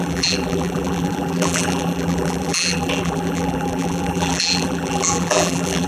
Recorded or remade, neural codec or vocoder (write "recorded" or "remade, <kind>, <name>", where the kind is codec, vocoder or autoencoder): remade, vocoder, BigVGAN v2